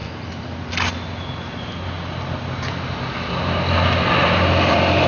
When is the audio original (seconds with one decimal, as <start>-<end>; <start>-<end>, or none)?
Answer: 0.0-5.1